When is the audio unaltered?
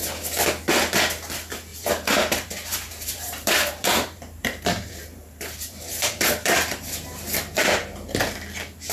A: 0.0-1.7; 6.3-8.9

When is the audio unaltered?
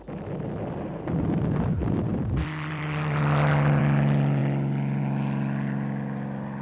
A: 0.0-2.1; 3.8-6.6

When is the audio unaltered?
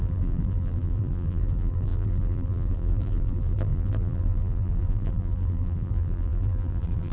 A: none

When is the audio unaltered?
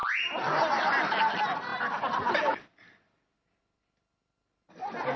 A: 0.0-5.2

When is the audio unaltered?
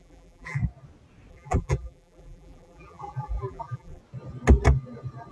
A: 0.6-1.3; 4.0-5.3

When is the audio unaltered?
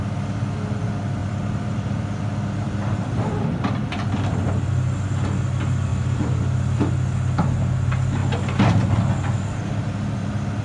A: 0.0-1.2; 4.7-5.9; 6.9-10.6